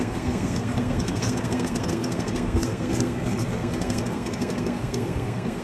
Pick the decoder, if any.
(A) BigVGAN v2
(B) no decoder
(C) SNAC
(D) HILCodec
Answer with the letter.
C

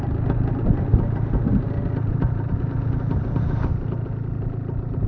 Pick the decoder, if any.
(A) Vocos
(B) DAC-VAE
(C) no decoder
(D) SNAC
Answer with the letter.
C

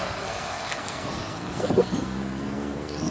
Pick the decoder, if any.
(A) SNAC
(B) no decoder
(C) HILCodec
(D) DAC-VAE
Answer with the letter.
A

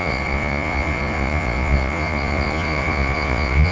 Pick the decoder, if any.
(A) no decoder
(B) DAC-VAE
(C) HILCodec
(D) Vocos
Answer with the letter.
D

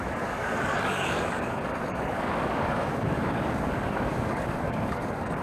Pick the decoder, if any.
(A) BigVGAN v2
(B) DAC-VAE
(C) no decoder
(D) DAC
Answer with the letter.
D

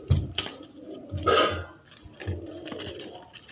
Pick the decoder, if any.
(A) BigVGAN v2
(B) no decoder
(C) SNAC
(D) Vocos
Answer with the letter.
B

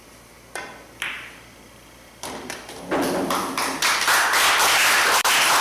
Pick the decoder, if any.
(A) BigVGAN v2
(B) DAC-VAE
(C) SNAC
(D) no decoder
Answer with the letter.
A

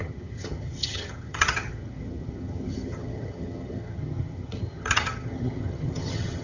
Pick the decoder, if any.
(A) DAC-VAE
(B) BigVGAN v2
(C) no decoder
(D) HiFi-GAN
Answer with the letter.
D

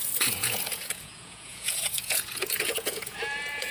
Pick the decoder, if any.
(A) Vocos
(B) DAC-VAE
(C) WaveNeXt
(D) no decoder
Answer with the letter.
A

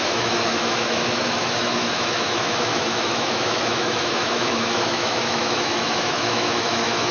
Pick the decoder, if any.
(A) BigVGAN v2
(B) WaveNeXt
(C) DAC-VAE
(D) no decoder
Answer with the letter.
C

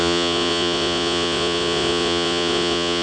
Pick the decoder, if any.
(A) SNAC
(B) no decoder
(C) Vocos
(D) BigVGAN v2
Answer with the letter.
C